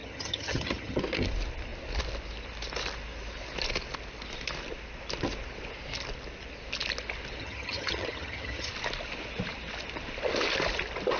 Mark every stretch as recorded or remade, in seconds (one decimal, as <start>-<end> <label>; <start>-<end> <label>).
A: 0.0-1.0 remade; 1.0-7.4 recorded; 7.4-8.7 remade; 8.7-11.2 recorded